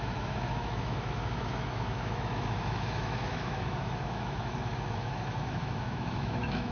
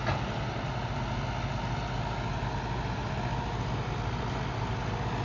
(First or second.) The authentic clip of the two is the second